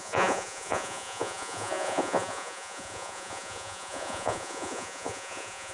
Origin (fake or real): fake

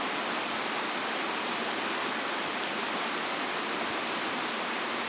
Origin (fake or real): real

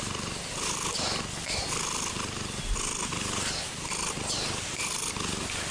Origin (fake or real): real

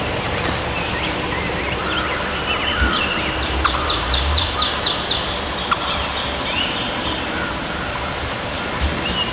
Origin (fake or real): real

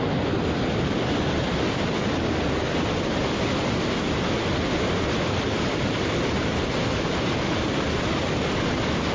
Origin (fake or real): real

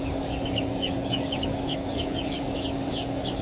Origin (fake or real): fake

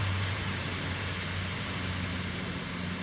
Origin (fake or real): fake